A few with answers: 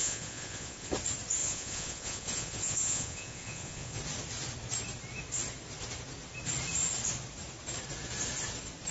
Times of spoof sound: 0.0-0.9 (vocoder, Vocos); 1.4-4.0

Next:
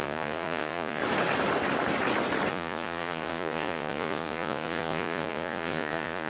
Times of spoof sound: 0.0-1.0 (vocoder, Vocos); 2.5-6.3